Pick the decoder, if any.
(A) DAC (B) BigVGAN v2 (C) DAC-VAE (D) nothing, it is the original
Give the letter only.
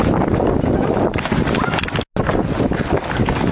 D